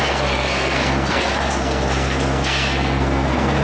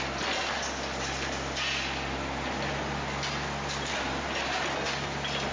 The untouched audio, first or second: second